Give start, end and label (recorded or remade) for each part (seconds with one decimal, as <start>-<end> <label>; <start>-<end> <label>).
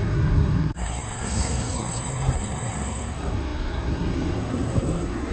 0.0-5.3 remade